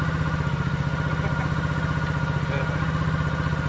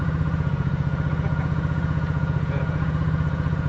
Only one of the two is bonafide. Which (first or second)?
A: first